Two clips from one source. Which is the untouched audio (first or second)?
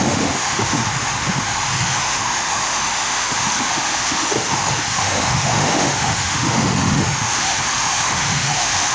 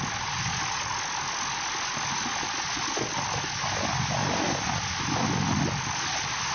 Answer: second